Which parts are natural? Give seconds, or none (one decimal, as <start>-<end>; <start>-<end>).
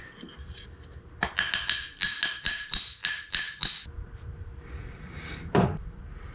1.3-2.4; 3.0-3.9